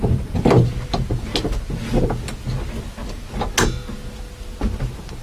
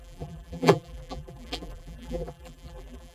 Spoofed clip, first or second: second